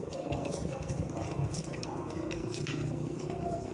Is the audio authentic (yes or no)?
no